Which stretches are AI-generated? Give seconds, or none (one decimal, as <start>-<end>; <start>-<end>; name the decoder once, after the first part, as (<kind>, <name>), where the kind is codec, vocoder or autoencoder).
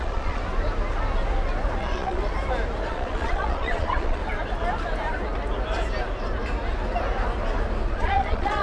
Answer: 0.0-0.4 (vocoder, Vocos); 1.8-2.2; 2.9-4.2; 7.9-8.6